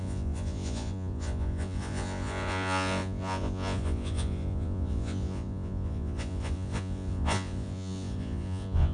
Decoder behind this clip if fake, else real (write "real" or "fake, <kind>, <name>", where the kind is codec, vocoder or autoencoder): fake, vocoder, Vocos